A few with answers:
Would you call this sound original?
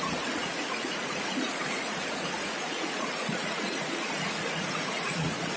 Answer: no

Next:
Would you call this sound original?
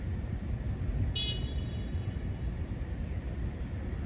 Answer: yes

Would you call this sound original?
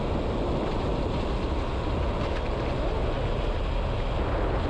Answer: yes